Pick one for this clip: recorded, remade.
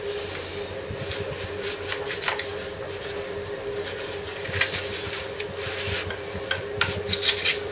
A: recorded